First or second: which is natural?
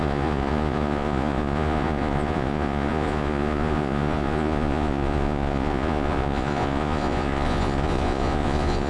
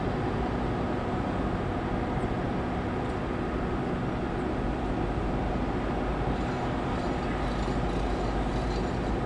second